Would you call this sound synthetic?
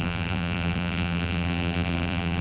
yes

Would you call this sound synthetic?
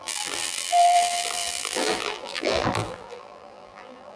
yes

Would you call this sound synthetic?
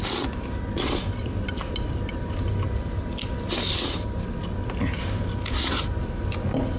yes